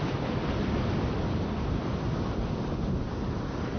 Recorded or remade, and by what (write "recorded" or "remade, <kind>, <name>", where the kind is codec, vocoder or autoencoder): recorded